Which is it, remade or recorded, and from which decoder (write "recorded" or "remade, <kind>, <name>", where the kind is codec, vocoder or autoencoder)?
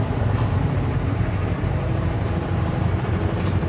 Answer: remade, vocoder, BigVGAN v2